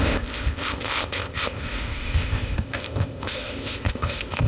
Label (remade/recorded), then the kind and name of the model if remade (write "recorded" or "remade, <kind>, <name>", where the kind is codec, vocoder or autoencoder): remade, codec, ZipCodec